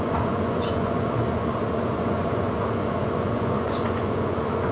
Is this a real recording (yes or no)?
no